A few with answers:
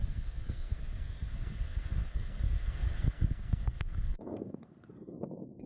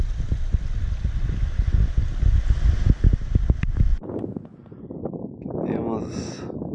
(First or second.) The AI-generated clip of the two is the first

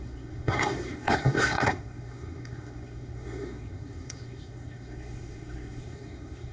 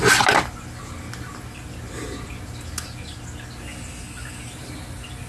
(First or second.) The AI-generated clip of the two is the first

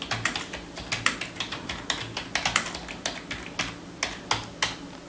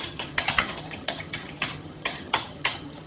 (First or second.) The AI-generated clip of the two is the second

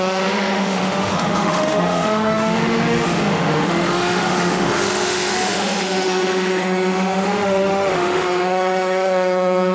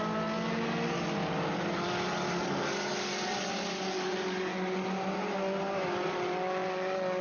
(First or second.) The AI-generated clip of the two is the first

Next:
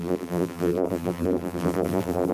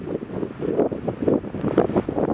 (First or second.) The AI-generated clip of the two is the first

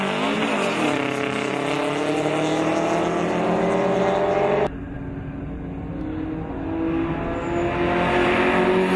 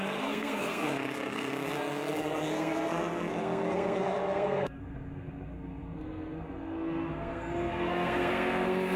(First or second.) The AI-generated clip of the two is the second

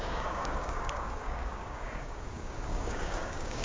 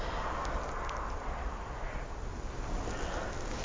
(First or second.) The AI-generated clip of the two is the first